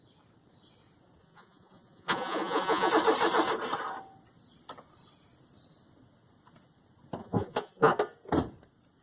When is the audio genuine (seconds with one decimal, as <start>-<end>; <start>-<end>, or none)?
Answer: 0.0-1.2; 2.9-7.2; 7.9-9.0